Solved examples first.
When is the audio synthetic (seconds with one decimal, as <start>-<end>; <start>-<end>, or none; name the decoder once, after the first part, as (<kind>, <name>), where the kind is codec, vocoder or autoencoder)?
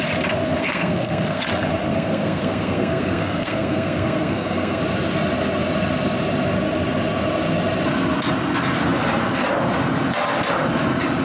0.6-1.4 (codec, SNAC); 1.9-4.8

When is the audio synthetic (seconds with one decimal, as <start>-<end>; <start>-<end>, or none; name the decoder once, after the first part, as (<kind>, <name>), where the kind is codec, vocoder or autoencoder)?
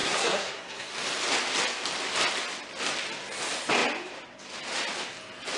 0.0-0.9 (codec, SNAC)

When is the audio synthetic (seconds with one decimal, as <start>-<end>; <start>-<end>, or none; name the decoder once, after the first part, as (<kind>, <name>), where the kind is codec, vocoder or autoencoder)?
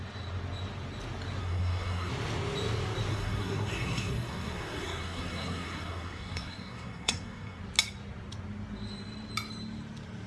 1.4-2.1 (codec, SNAC); 3.1-7.6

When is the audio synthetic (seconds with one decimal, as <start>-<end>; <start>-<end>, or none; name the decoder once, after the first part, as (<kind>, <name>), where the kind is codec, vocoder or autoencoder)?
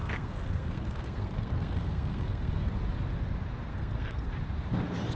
0.0-2.7 (codec, SNAC); 3.7-4.3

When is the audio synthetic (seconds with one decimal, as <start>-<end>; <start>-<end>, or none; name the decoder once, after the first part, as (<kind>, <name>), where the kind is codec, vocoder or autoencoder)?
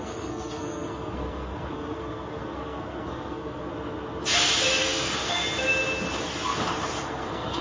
0.0-3.7 (codec, SNAC); 4.8-5.4; 7.0-7.6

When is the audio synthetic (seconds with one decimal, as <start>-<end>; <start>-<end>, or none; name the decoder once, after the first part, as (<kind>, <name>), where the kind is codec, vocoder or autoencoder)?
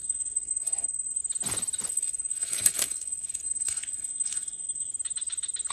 0.0-1.2 (codec, SNAC); 1.9-4.9